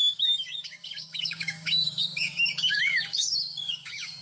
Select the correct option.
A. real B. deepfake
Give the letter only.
B